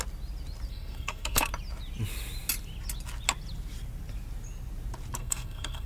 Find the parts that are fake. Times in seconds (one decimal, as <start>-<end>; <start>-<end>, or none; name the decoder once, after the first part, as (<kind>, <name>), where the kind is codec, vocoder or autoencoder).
0.7-1.5 (codec, SNAC); 5.2-5.9